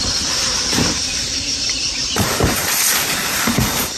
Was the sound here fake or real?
fake